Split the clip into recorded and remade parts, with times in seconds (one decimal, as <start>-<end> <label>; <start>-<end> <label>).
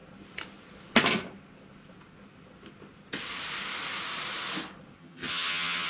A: 0.0-5.0 recorded; 5.0-5.9 remade